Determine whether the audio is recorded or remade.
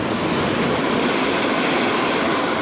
recorded